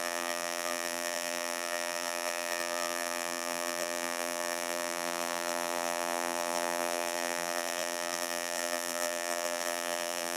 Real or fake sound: fake